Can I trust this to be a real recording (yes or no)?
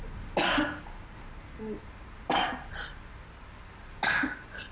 yes